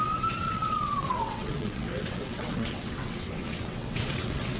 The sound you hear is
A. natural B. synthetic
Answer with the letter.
B